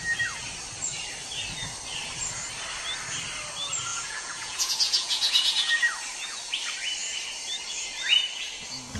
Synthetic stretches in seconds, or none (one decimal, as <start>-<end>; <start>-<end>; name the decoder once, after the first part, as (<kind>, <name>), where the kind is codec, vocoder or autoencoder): 3.9-5.7 (vocoder, Vocos)